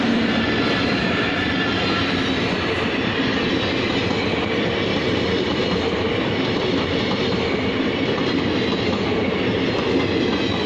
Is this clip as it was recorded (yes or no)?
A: yes